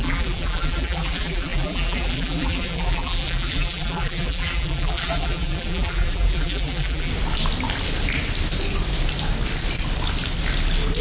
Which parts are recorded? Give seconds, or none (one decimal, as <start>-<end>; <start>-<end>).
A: 7.1-11.0